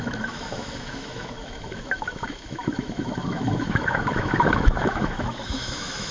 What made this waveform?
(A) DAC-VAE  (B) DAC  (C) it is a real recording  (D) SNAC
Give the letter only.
A